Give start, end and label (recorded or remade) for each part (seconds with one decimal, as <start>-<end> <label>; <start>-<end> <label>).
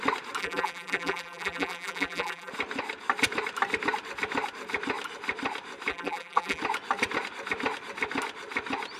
0.0-0.4 recorded; 0.4-2.5 remade; 2.5-5.9 recorded; 5.9-6.6 remade; 6.6-9.0 recorded